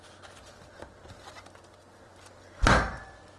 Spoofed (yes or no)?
no